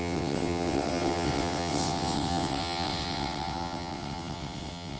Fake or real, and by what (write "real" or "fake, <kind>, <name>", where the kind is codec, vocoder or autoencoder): fake, vocoder, WaveNeXt